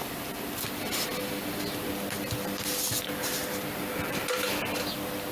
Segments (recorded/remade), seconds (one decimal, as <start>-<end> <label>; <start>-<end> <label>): 0.0-5.3 remade